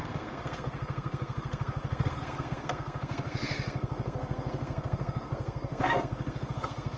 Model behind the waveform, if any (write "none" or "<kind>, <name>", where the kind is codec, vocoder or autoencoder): codec, SNAC